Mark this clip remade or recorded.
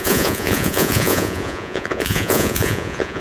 remade